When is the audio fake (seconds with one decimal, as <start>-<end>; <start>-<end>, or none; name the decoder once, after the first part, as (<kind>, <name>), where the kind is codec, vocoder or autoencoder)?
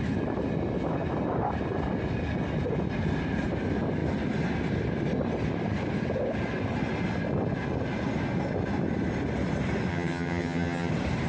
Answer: 9.9-10.9 (vocoder, HiFi-GAN)